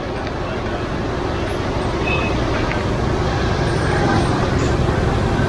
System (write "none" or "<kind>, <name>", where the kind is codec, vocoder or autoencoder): none